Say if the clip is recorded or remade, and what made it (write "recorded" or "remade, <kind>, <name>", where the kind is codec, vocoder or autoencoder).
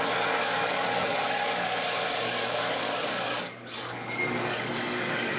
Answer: remade, codec, DAC